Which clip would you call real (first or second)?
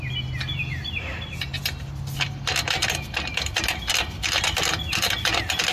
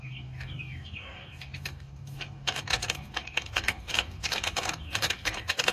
first